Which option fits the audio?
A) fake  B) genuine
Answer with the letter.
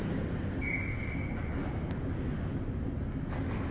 B